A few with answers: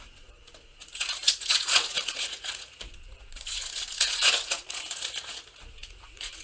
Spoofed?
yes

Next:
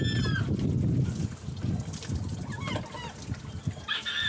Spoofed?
no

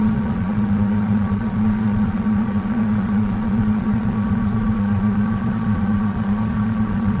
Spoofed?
yes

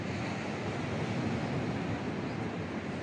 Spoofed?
no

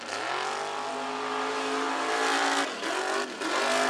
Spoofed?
no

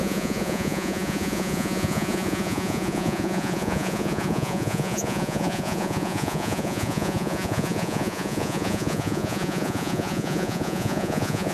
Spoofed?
yes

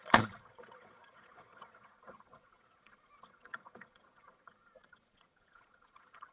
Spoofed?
yes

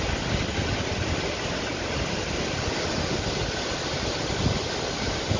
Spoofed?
no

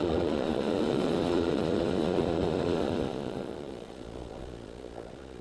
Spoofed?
yes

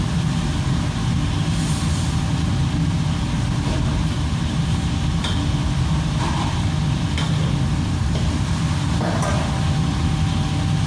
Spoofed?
no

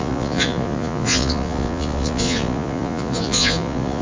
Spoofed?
yes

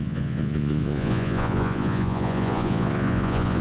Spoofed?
yes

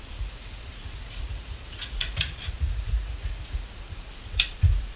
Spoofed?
yes